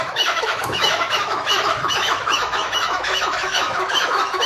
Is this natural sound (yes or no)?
no